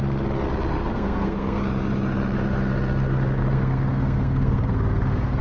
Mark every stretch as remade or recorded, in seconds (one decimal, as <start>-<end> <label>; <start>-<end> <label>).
0.0-0.8 recorded; 0.8-1.6 remade; 1.6-3.4 recorded; 3.4-5.4 remade